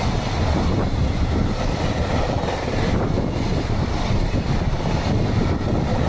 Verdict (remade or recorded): recorded